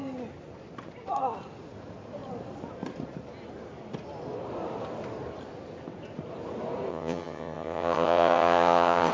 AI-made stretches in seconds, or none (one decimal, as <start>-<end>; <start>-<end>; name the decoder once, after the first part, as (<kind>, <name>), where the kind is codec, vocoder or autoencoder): 6.9-9.1 (vocoder, HiFi-GAN)